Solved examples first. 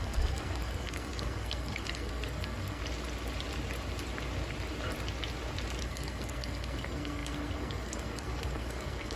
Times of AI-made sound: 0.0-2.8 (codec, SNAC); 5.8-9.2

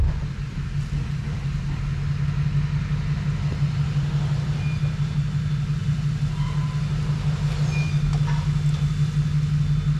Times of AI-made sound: none

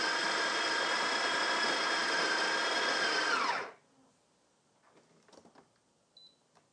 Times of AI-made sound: none

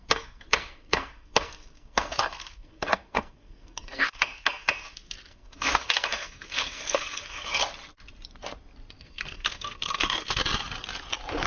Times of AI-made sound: 0.0-7.6 (codec, SNAC); 9.0-10.4

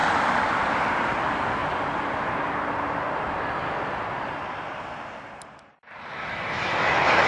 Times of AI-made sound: none

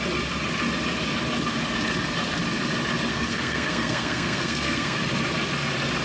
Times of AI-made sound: 3.1-5.0 (codec, SNAC)

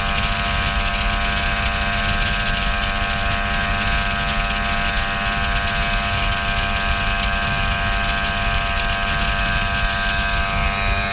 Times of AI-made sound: none